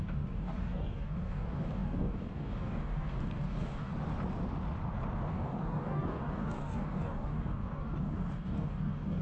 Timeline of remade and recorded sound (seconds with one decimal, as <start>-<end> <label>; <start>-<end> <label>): 0.0-3.9 remade; 3.9-5.3 recorded; 5.3-9.2 remade